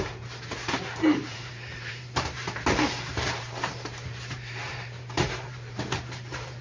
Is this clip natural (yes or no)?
no